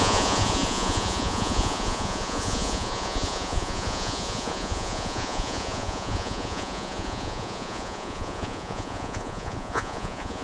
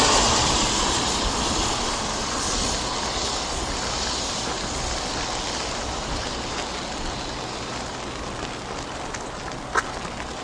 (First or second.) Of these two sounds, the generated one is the first